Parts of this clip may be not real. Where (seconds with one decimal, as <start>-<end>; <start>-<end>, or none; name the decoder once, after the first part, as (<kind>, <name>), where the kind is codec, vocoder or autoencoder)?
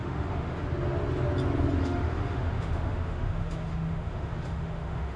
0.0-0.6 (autoencoder, DAC-VAE); 1.8-5.2